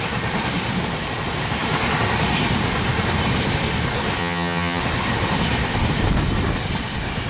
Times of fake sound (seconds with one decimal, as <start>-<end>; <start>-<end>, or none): 4.2-4.8